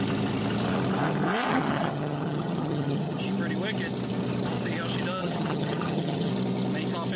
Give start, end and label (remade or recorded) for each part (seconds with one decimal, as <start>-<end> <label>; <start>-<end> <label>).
0.0-1.5 recorded; 1.5-3.2 remade; 3.2-5.2 recorded; 5.2-6.3 remade; 6.3-7.2 recorded